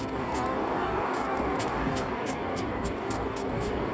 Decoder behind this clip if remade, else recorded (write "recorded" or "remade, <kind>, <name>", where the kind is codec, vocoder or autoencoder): remade, codec, DAC